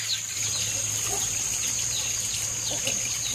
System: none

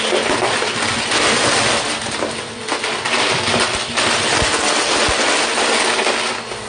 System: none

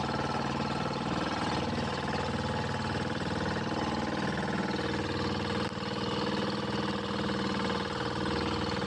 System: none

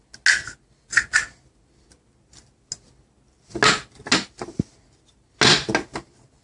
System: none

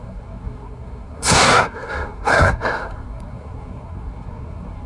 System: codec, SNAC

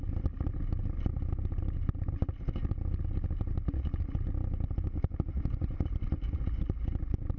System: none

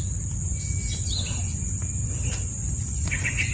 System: none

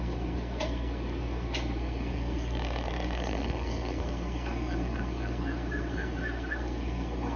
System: codec, SNAC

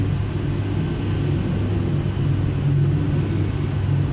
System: none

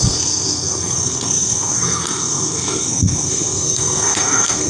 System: codec, SNAC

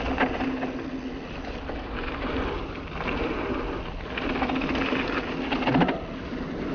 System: none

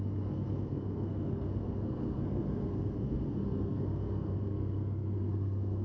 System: codec, SNAC